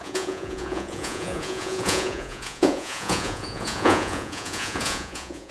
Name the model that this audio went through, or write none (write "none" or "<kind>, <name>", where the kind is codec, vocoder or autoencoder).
vocoder, Vocos